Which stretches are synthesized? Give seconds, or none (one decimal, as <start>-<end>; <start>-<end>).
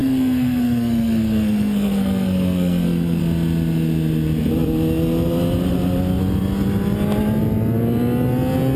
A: 0.0-3.2